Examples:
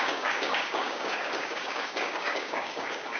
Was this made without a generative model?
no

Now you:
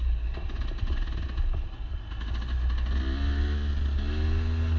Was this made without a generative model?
yes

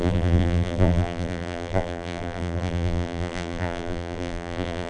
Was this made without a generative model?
no